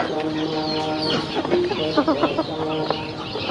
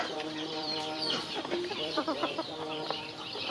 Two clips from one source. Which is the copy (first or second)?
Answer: second